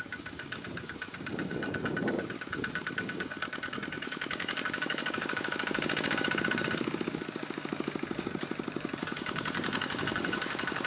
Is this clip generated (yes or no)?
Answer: yes